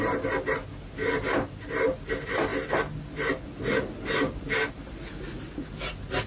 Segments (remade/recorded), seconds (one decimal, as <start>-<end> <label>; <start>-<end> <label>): 0.0-6.3 recorded